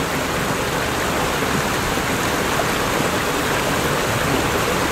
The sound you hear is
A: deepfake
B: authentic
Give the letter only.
B